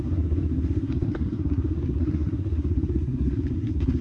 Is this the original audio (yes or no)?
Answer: no